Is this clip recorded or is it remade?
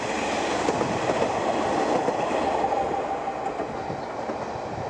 recorded